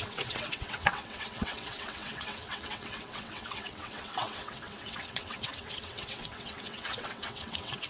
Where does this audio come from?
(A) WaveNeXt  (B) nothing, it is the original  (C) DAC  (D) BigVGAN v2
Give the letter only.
A